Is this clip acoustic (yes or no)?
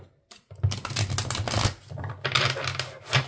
yes